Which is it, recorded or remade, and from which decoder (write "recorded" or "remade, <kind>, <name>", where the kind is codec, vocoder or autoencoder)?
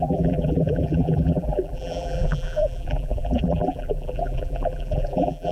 remade, vocoder, BigVGAN v2